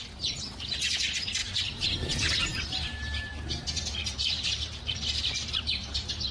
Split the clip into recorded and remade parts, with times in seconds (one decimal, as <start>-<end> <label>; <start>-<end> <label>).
0.0-4.0 recorded; 4.0-6.3 remade